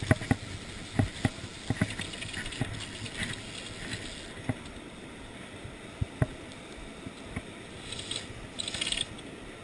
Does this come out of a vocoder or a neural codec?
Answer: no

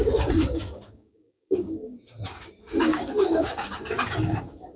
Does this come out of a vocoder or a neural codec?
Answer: yes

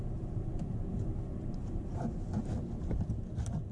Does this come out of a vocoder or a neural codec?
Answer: no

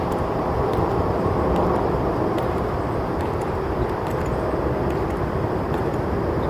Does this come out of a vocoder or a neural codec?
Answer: yes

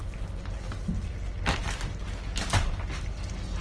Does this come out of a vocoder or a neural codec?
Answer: no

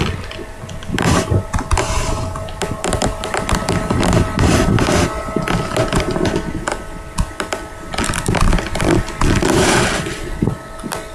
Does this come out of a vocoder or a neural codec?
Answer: no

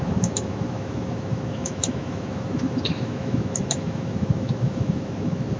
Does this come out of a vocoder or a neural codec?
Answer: yes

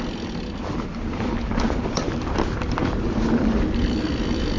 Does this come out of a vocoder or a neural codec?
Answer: no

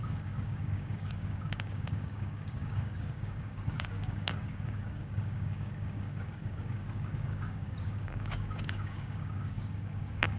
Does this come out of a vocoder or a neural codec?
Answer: yes